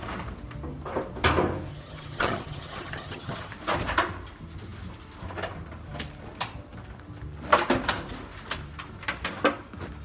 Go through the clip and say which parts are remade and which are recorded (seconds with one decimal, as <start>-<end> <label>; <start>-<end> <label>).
0.0-1.7 recorded; 1.7-3.5 remade; 3.5-10.0 recorded